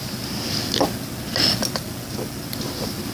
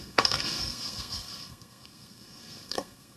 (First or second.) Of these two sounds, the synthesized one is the second